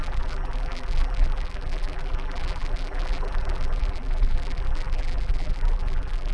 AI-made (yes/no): yes